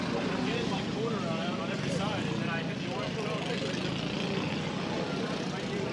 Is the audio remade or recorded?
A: recorded